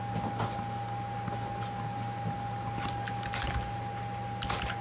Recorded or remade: recorded